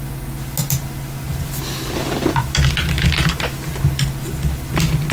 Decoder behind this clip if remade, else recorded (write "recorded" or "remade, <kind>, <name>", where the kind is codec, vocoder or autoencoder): recorded